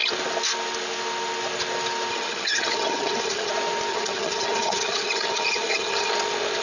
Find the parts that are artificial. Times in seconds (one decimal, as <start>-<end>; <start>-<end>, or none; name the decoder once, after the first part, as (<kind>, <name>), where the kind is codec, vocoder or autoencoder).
2.1-3.5 (vocoder, HiFi-GAN); 3.9-6.1